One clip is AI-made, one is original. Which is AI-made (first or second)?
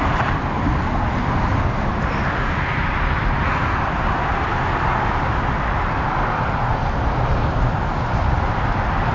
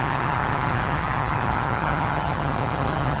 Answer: second